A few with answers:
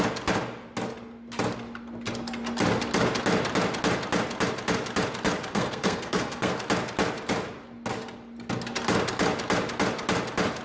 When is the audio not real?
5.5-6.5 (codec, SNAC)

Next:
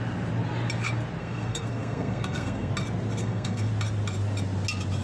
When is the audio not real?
1.2-2.7 (codec, SNAC); 3.2-3.7